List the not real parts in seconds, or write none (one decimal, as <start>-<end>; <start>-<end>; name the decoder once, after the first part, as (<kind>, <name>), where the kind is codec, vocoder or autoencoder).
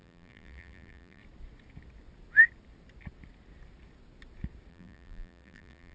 0.0-1.2 (vocoder, BigVGAN v2); 4.7-5.9